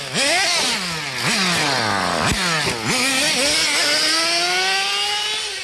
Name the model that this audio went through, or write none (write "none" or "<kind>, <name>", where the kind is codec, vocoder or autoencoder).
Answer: none